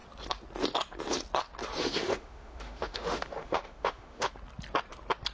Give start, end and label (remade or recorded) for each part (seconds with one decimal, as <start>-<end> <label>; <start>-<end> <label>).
0.0-1.8 recorded; 1.8-4.3 remade; 4.3-5.3 recorded